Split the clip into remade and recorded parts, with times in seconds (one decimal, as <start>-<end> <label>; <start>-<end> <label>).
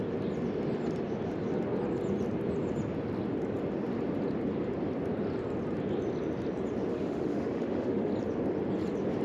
0.0-6.9 recorded; 6.9-8.1 remade; 8.1-9.2 recorded